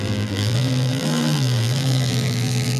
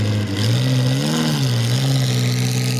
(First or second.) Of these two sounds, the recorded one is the second